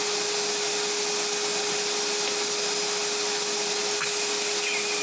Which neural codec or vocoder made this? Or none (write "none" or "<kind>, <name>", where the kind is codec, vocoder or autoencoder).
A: none